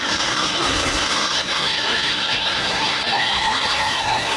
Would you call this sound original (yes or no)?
no